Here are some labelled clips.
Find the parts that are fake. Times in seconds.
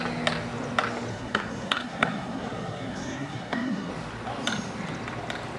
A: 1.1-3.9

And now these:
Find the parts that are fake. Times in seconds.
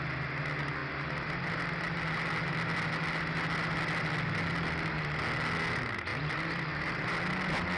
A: none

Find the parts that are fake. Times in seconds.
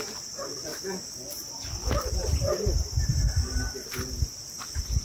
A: none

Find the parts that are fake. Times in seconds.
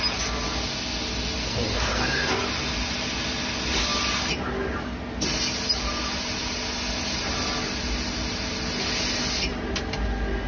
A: 1.4-2.4